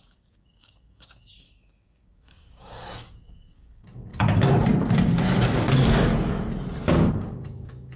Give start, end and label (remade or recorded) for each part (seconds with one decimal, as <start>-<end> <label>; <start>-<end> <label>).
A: 0.0-4.1 remade; 4.1-5.4 recorded; 5.4-6.1 remade; 6.1-7.1 recorded; 7.1-8.0 remade